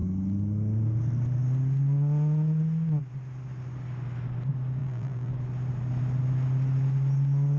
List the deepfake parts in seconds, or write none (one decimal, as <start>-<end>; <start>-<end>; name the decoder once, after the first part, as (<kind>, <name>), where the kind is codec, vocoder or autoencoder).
4.8-5.3 (vocoder, BigVGAN v2)